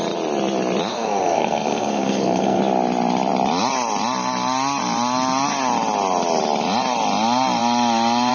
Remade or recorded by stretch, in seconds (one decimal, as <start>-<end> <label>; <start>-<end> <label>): 0.0-0.9 recorded; 0.9-2.6 remade; 2.6-8.3 recorded